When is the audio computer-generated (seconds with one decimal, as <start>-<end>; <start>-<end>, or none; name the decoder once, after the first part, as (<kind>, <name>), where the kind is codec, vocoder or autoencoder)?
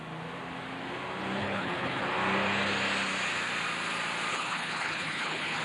1.4-2.0 (codec, HILCodec); 4.3-5.6